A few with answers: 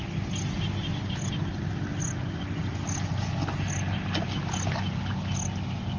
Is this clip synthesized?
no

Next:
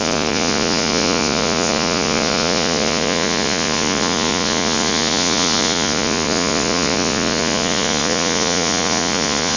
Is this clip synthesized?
yes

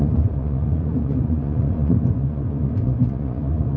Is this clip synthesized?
yes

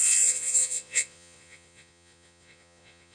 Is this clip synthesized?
yes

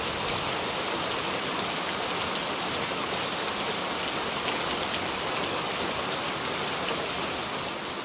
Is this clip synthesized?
no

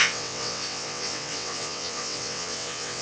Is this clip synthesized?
yes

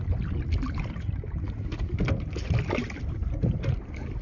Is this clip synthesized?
no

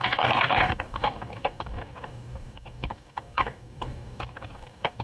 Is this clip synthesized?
yes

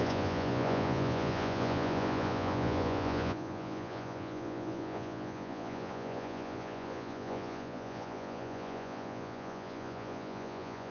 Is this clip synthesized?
yes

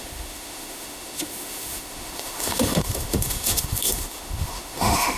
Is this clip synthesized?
yes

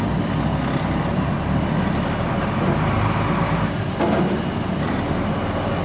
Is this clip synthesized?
no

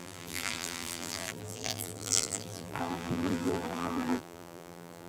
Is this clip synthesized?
yes